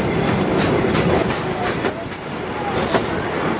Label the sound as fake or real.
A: fake